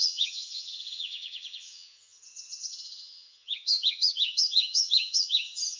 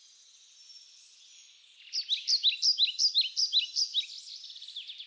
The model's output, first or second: first